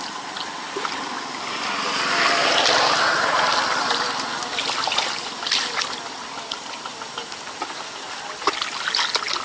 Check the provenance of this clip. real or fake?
real